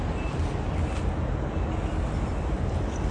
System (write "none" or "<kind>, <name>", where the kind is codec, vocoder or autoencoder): none